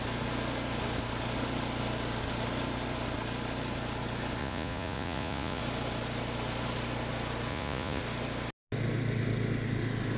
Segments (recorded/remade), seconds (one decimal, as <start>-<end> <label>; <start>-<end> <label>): 0.0-4.4 recorded; 4.4-5.6 remade; 5.6-7.5 recorded; 7.5-8.0 remade; 8.0-10.2 recorded